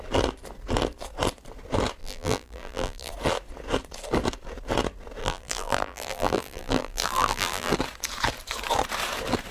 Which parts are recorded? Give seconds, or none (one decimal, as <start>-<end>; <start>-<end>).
0.0-2.0; 3.1-5.2; 7.7-9.5